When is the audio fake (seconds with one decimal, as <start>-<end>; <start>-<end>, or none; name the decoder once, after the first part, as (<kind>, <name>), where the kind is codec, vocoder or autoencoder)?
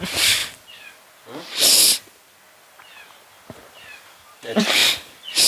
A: 0.0-0.4 (vocoder, BigVGAN v2); 3.7-4.8